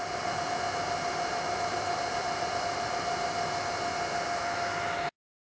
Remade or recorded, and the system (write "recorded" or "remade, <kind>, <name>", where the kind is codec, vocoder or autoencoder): recorded